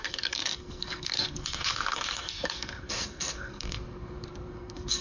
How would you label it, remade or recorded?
remade